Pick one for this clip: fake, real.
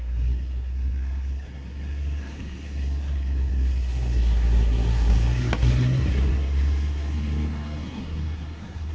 fake